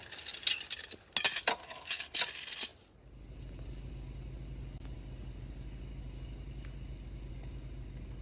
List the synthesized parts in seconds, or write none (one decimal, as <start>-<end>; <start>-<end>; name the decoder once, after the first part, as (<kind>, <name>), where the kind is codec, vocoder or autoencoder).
1.6-2.2 (codec, HILCodec)